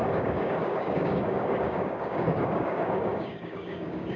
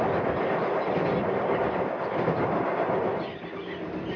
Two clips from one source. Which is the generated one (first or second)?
first